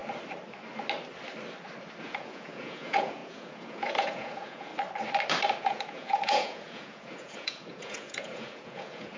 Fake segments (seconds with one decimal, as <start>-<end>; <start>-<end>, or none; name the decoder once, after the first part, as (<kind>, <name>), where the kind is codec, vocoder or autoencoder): 2.0-4.7 (vocoder, Vocos); 5.6-9.2